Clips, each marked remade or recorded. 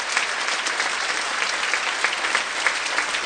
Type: recorded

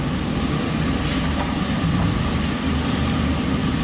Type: recorded